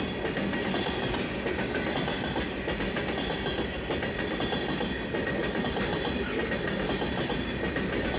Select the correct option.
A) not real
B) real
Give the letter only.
B